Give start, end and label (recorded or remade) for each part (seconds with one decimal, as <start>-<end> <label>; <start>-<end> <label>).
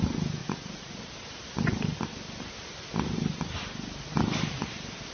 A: 0.0-0.4 recorded; 0.4-1.0 remade; 1.0-5.1 recorded